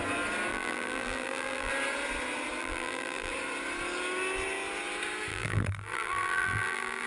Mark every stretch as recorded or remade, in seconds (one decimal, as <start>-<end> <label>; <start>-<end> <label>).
0.0-0.5 recorded; 0.5-1.7 remade; 1.7-2.6 recorded; 2.6-3.3 remade; 3.3-5.3 recorded; 5.3-7.1 remade